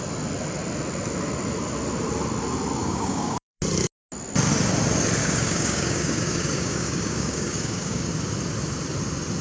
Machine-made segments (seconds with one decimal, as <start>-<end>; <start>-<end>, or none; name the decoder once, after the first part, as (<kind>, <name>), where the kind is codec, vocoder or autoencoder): 2.8-3.6 (codec, DAC); 5.2-8.1